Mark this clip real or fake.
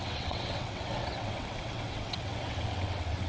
fake